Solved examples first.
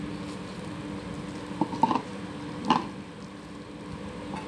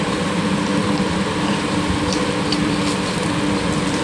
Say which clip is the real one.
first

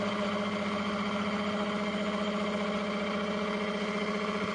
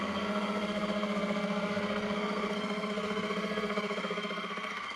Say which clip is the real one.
first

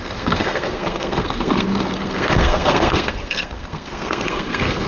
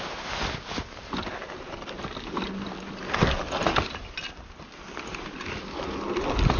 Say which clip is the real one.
second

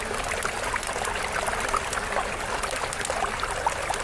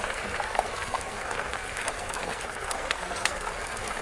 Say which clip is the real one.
first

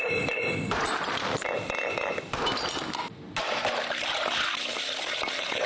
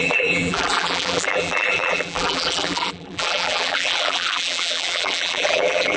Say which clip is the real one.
first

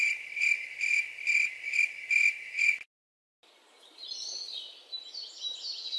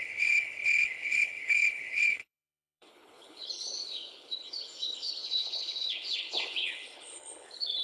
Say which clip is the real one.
first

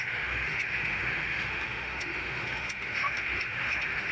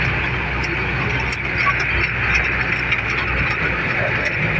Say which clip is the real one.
second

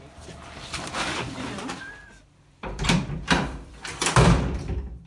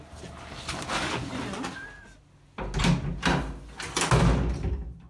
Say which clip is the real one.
second